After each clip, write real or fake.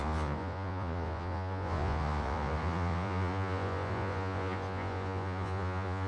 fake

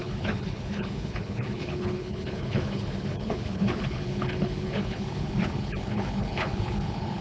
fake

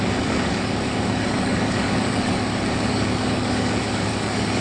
fake